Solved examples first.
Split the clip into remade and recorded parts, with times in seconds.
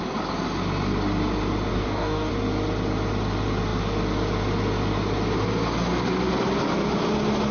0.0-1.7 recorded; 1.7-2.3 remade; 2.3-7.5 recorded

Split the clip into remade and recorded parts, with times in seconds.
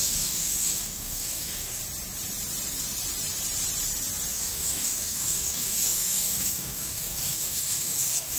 0.0-1.8 remade; 1.8-4.3 recorded; 4.3-8.4 remade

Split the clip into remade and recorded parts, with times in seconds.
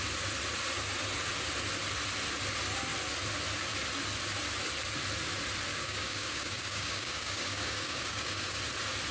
0.0-5.7 recorded; 5.7-8.6 remade; 8.6-9.1 recorded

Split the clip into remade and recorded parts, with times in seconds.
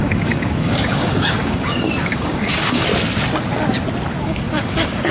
0.0-2.9 remade; 2.9-4.2 recorded; 4.2-5.1 remade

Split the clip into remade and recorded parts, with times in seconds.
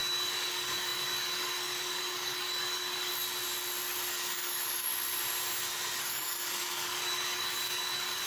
0.0-3.1 remade; 3.1-4.1 recorded; 4.1-4.9 remade; 4.9-6.0 recorded; 6.0-8.3 remade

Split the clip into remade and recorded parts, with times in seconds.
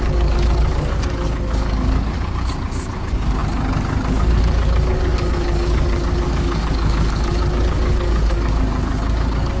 0.0-9.6 remade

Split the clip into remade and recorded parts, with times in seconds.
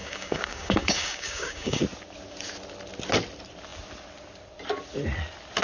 0.0-1.8 remade; 1.8-5.6 recorded